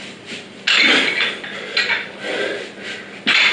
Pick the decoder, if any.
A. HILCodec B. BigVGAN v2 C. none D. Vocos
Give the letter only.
C